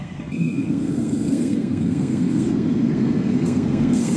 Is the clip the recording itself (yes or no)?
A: no